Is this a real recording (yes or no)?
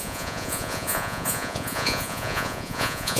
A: no